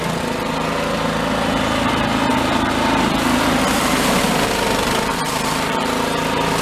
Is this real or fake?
fake